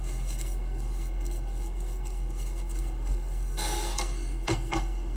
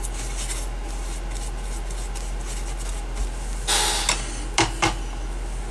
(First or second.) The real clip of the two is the second